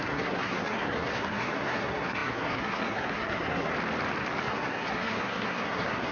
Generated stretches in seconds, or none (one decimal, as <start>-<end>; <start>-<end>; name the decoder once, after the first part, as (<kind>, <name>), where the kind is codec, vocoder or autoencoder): 0.0-3.7 (codec, SNAC); 4.4-6.1